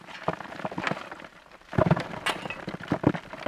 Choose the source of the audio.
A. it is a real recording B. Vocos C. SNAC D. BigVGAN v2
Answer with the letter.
A